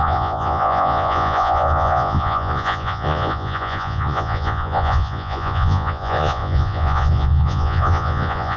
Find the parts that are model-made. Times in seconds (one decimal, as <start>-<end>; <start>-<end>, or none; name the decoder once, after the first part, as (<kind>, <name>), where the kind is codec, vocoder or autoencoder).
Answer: 0.0-8.6 (vocoder, Vocos)